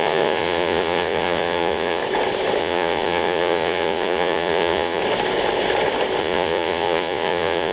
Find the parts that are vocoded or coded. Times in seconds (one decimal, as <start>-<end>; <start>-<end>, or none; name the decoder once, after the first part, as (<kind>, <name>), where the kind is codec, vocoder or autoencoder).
0.0-2.0 (vocoder, Vocos); 2.6-5.0; 6.2-7.7